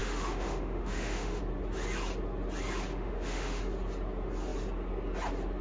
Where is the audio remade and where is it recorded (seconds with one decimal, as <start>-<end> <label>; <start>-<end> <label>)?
0.0-1.4 remade; 1.4-2.9 recorded; 2.9-3.6 remade; 3.6-5.6 recorded